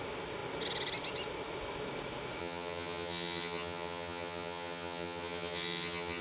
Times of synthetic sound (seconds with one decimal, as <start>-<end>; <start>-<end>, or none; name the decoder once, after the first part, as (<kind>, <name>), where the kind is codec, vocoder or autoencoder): 2.4-6.2 (vocoder, HiFi-GAN)